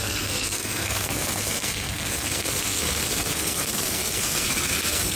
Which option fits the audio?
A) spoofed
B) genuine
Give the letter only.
A